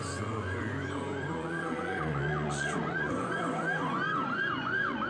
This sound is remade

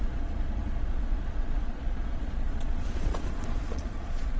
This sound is remade